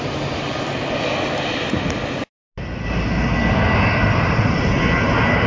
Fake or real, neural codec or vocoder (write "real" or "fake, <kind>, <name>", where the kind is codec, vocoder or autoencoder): real